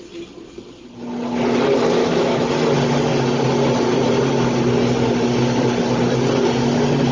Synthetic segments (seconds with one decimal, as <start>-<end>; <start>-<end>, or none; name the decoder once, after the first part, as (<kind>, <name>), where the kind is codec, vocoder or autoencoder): 2.0-2.5 (autoencoder, DAC-VAE)